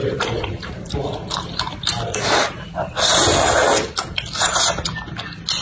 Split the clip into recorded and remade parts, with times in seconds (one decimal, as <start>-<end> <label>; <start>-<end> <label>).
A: 0.0-3.4 remade; 3.4-5.6 recorded